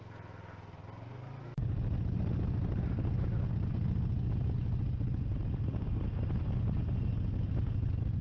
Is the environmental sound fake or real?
real